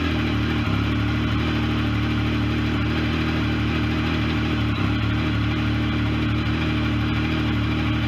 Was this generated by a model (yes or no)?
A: no